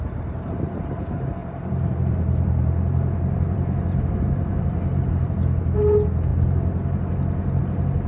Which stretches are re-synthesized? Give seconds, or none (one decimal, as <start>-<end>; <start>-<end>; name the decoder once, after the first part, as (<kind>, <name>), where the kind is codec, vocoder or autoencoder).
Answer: 1.4-5.6 (vocoder, BigVGAN v2)